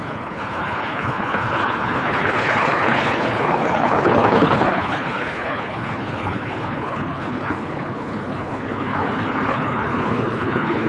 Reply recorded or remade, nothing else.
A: remade